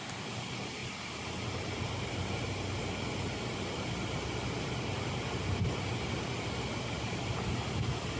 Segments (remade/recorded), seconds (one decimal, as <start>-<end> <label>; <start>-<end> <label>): 0.0-0.8 recorded; 0.8-2.1 remade; 2.1-8.2 recorded